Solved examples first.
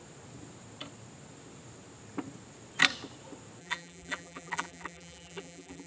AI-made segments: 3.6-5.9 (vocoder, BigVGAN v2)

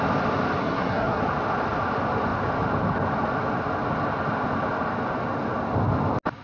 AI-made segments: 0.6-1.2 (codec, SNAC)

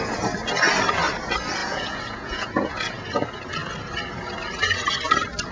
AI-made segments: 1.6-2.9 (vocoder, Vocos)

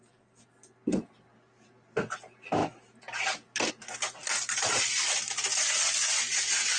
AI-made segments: 4.2-4.9 (vocoder, BigVGAN v2)

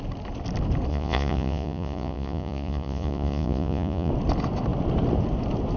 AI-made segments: 0.9-4.1 (vocoder, Vocos)

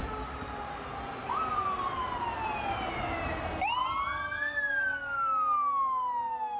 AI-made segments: none

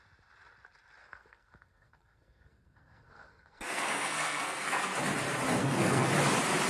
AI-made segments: 1.0-5.0 (codec, SNAC); 5.6-6.1

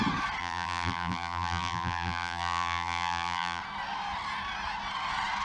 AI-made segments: 0.4-3.6 (vocoder, BigVGAN v2)